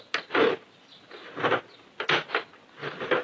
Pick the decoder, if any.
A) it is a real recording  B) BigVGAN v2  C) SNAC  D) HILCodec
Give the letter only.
A